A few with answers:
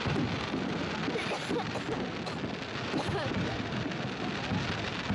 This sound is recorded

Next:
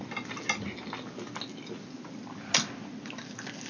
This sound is recorded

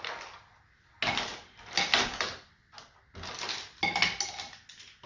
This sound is recorded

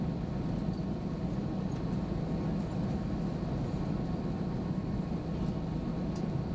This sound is recorded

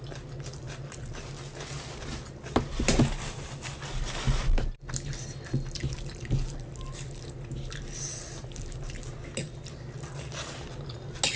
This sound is recorded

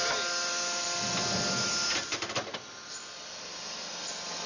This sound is recorded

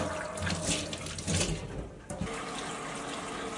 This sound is recorded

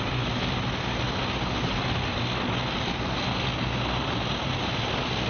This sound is recorded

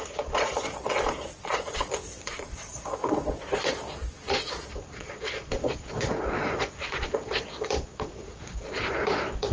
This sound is remade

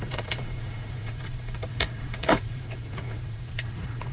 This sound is remade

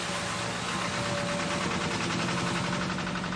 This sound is recorded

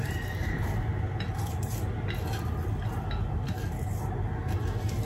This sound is recorded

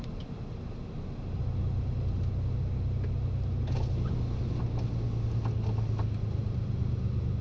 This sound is recorded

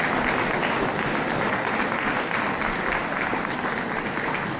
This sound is recorded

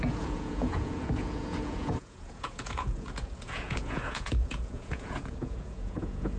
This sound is remade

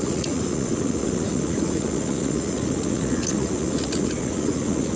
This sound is remade